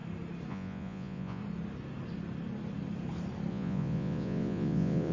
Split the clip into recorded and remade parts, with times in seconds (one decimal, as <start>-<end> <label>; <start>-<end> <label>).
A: 0.0-0.5 recorded; 0.5-1.4 remade; 1.4-3.5 recorded; 3.5-5.1 remade